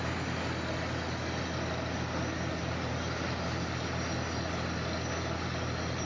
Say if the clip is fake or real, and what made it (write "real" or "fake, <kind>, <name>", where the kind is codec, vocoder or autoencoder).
real